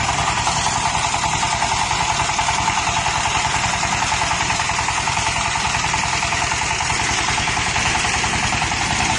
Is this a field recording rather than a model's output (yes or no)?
no